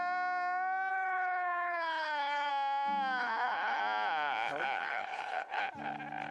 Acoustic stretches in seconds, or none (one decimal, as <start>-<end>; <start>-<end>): 0.0-0.9; 2.5-3.2; 3.8-4.8; 5.6-6.3